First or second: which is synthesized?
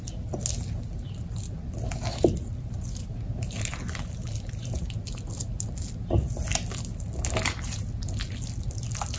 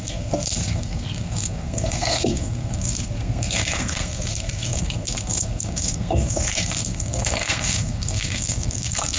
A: second